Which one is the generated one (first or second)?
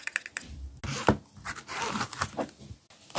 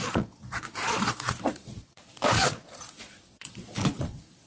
second